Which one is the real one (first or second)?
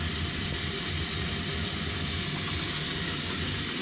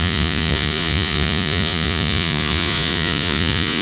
first